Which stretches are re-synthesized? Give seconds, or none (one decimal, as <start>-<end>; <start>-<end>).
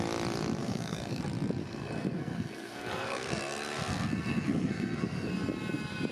0.6-1.2; 1.6-5.3